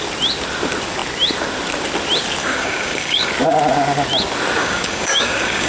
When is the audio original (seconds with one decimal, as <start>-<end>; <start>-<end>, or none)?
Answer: 0.0-2.4; 3.3-4.6